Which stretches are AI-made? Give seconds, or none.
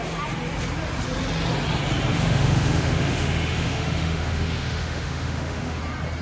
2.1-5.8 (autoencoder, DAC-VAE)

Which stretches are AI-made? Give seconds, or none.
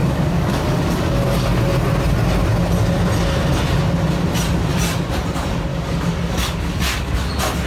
0.0-1.6 (codec, DAC); 5.7-7.3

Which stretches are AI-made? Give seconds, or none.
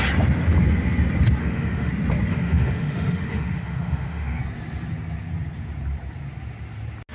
1.4-1.9 (autoencoder, DAC-VAE); 2.3-4.4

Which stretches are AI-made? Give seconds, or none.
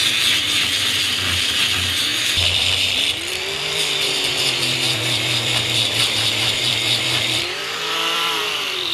0.0-8.9 (vocoder, BigVGAN v2)